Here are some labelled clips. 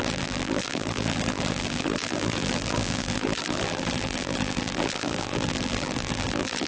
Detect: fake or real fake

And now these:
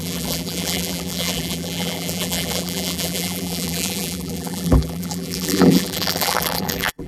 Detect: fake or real fake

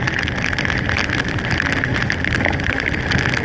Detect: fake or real real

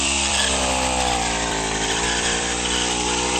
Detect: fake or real fake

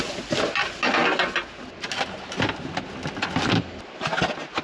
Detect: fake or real real